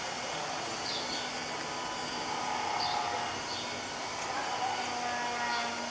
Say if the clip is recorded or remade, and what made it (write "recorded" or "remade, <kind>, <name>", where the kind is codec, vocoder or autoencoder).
recorded